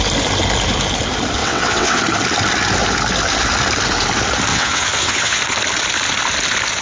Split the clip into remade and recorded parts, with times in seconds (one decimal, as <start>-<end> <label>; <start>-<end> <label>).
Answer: 0.0-1.4 recorded; 1.4-2.0 remade; 2.0-4.5 recorded; 4.5-5.4 remade; 5.4-6.8 recorded

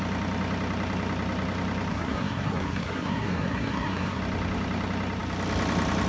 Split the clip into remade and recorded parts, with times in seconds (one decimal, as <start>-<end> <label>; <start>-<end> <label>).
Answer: 0.0-1.9 recorded; 1.9-4.2 remade; 4.2-6.1 recorded

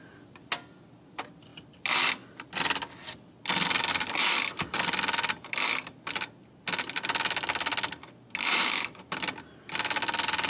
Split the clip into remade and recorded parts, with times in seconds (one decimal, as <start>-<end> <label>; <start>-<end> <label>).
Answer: 0.0-8.4 recorded; 8.4-9.0 remade; 9.0-10.5 recorded

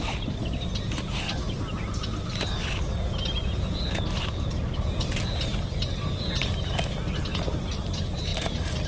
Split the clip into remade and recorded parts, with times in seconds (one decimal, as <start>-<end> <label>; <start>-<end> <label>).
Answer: 0.0-8.9 recorded

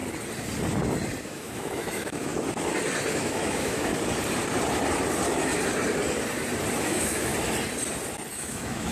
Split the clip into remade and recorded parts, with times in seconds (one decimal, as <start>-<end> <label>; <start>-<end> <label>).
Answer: 0.0-1.2 recorded; 1.2-2.3 remade; 2.3-3.1 recorded; 3.1-3.9 remade; 3.9-6.8 recorded; 6.8-7.3 remade; 7.3-8.3 recorded; 8.3-8.9 remade

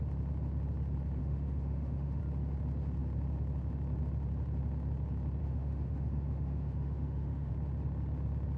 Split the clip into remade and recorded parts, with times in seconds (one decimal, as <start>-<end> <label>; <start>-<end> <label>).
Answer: 0.0-1.2 recorded; 1.2-2.2 remade; 2.2-5.4 recorded; 5.4-7.5 remade; 7.5-8.6 recorded

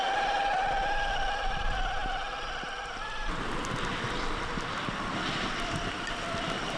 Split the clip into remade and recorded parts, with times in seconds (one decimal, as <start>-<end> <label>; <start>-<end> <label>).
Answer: 0.0-6.8 recorded

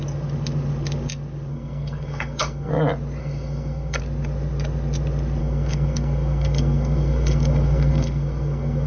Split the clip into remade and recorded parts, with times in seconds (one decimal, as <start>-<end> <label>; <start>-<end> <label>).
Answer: 0.0-1.5 recorded; 1.5-2.7 remade; 2.7-3.2 recorded; 3.2-4.0 remade; 4.0-5.4 recorded; 5.4-8.9 remade